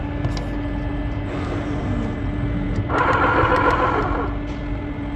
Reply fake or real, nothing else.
real